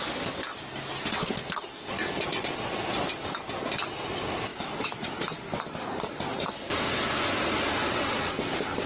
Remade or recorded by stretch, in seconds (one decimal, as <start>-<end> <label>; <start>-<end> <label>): 0.0-4.5 recorded; 4.5-5.2 remade; 5.2-8.9 recorded